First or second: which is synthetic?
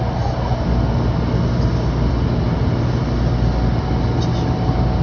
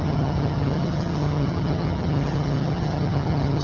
second